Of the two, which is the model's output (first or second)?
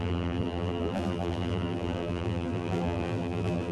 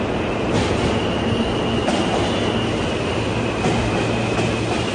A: first